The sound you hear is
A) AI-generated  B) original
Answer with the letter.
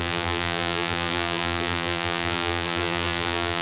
A